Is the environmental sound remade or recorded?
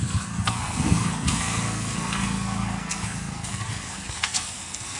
remade